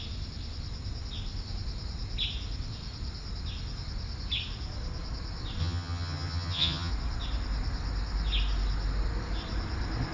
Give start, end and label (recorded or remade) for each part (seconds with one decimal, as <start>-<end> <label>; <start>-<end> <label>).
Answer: 0.0-5.6 recorded; 5.6-6.9 remade; 6.9-10.1 recorded